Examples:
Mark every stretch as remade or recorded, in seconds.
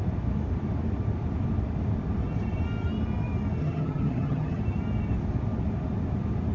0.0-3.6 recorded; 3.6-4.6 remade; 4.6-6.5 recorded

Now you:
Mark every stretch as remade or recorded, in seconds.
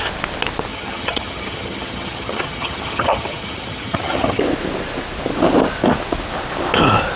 0.0-0.7 recorded; 0.7-4.4 remade; 4.4-7.2 recorded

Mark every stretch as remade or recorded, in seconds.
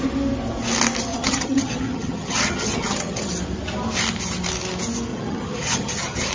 0.0-1.1 recorded; 1.1-3.3 remade; 3.3-5.1 recorded; 5.1-6.3 remade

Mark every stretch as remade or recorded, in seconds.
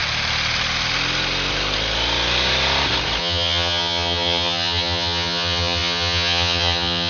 0.0-3.2 recorded; 3.2-7.1 remade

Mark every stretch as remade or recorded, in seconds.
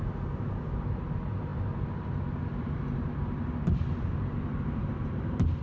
0.0-5.6 recorded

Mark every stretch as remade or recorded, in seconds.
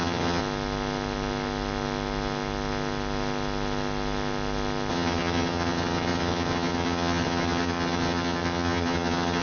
0.0-0.4 remade; 0.4-4.9 recorded; 4.9-9.4 remade